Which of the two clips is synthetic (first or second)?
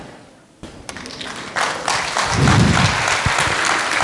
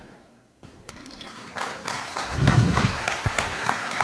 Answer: second